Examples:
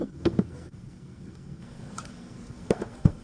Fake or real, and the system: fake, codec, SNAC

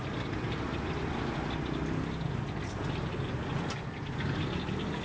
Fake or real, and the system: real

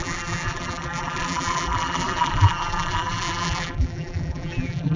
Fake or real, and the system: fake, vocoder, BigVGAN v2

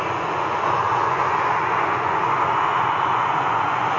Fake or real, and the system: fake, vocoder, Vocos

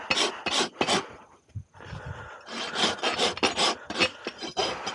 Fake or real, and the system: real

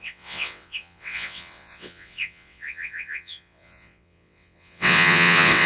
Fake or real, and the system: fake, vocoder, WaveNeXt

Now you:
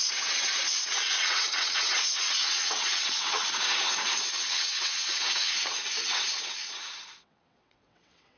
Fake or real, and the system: fake, vocoder, WaveNeXt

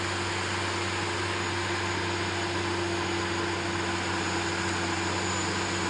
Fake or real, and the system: real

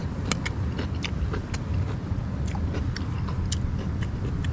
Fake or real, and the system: real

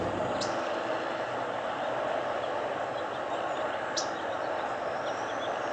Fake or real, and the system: real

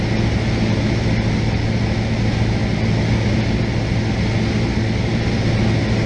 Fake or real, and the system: real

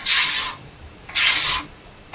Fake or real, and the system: real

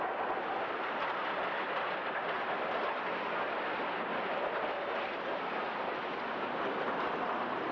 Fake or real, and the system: real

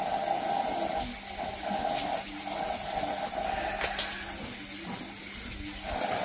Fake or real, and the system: real